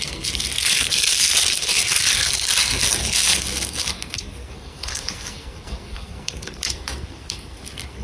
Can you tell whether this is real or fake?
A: fake